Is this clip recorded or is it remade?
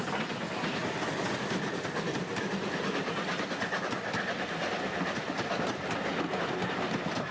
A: recorded